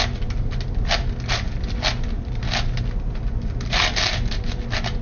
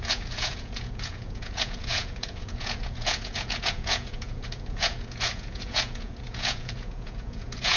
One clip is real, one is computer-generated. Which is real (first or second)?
first